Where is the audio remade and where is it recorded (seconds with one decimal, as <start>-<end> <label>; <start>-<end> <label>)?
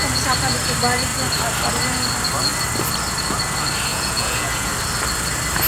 0.0-3.9 recorded; 3.9-4.7 remade; 4.7-5.7 recorded